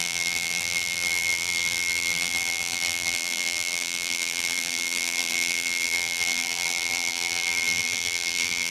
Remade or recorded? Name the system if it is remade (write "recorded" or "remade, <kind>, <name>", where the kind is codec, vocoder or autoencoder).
remade, vocoder, BigVGAN v2